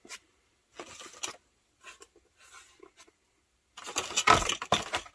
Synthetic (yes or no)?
no